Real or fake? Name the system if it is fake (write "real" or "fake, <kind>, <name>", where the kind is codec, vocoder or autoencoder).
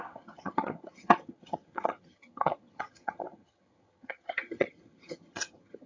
fake, vocoder, HiFi-GAN